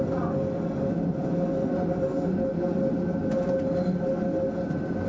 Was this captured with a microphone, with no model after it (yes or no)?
yes